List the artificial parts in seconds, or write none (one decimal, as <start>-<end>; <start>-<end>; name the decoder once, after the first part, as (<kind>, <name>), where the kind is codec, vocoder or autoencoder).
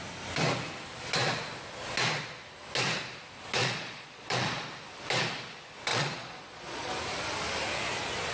3.6-4.7 (vocoder, Vocos); 5.9-6.9